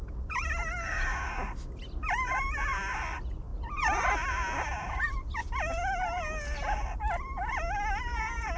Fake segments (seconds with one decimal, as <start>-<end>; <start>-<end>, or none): none